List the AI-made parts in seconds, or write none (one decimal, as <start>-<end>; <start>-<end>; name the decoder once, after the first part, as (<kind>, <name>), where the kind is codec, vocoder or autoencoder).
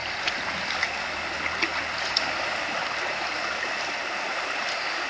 none